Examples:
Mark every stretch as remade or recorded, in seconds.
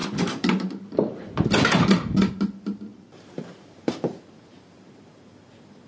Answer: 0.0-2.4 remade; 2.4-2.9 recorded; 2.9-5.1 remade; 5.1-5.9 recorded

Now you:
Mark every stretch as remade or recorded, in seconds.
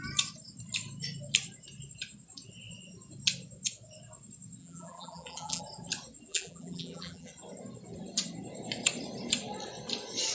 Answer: 0.0-4.6 recorded; 4.6-5.6 remade; 5.6-6.3 recorded; 6.3-7.3 remade; 7.3-10.3 recorded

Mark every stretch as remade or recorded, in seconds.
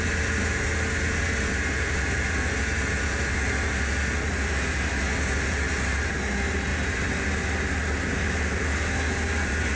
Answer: 0.0-9.8 recorded